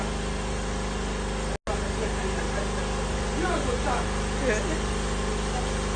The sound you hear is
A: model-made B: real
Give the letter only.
B